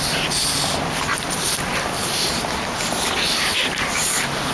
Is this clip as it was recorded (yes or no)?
yes